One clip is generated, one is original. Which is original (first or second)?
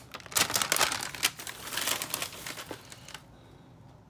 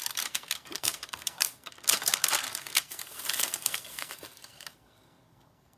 first